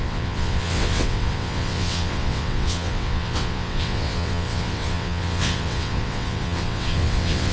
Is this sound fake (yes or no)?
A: yes